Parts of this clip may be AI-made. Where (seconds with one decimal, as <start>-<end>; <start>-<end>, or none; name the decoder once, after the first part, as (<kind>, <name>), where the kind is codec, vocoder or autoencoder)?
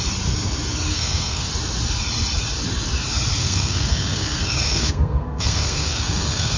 0.9-1.5 (codec, SNAC); 3.4-6.6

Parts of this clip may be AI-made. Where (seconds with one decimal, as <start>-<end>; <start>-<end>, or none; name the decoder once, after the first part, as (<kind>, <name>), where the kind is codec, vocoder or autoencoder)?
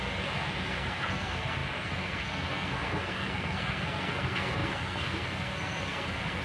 0.0-6.4 (codec, SNAC)